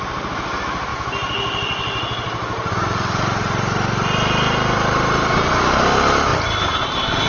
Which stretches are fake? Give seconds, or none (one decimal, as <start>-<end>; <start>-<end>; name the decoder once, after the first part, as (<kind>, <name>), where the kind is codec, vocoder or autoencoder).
none